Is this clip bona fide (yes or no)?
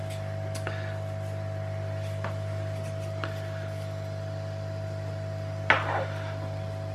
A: yes